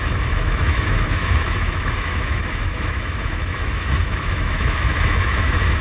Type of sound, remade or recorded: remade